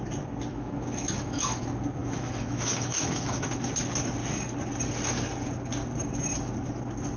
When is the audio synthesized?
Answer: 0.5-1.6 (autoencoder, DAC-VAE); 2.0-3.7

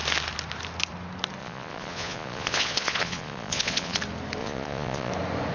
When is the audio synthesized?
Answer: 1.4-4.0 (vocoder, Vocos); 4.4-5.1

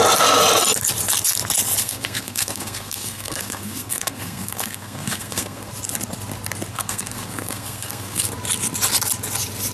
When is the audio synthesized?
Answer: 1.8-5.7 (codec, SNAC); 6.7-8.3

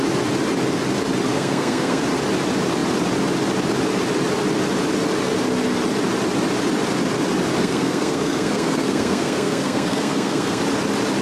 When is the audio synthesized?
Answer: 1.3-2.0 (codec, SNAC); 7.6-10.6

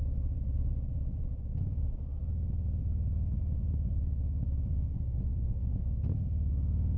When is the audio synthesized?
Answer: 4.7-5.9 (codec, SNAC)